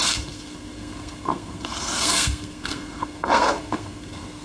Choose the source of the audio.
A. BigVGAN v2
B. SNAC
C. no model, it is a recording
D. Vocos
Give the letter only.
B